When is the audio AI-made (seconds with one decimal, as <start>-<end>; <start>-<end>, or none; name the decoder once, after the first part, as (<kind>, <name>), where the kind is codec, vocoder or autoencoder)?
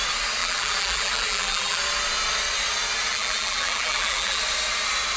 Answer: 0.4-1.8 (vocoder, BigVGAN v2); 3.1-4.4